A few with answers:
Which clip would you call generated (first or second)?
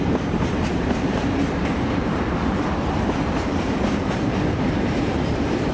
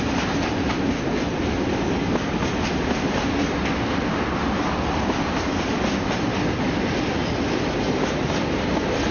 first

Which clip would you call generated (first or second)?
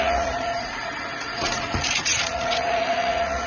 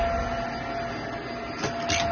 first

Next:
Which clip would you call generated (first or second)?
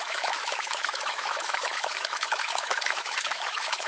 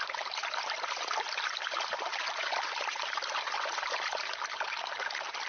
first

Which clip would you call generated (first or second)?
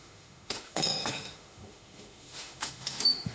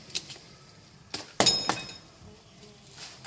first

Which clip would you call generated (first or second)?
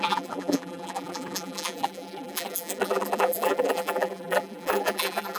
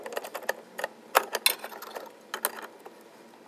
first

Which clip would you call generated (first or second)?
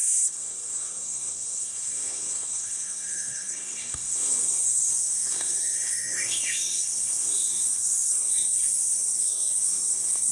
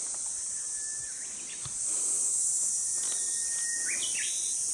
first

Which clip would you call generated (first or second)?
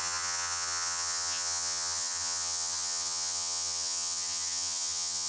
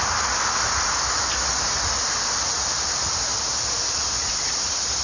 first